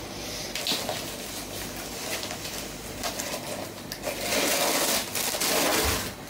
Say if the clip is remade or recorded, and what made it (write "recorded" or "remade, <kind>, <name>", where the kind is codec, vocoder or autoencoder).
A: recorded